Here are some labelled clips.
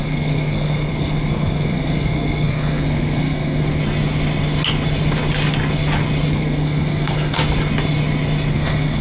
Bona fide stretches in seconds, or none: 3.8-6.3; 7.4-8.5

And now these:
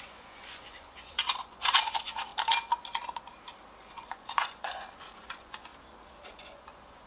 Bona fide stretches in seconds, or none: 2.3-3.8; 5.7-6.3

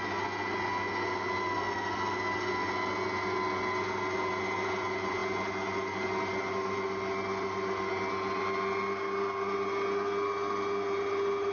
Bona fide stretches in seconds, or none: 0.0-11.5